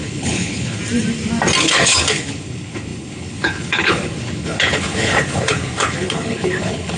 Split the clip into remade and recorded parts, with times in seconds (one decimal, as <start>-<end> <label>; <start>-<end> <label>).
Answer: 0.0-0.8 remade; 0.8-1.6 recorded; 1.6-7.0 remade